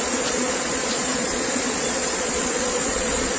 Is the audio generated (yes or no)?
yes